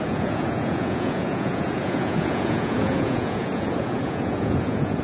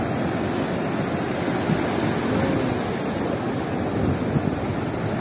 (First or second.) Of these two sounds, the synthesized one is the first